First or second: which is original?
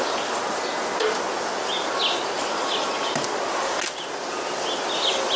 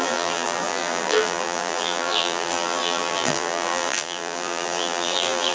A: first